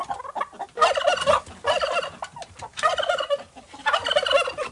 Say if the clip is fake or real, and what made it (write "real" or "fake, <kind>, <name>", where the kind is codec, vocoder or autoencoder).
real